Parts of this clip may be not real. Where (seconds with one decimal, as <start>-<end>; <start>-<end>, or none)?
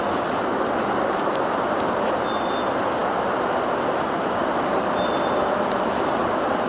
none